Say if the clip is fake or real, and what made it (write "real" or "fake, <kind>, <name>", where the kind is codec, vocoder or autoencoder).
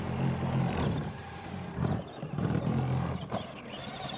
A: fake, vocoder, BigVGAN v2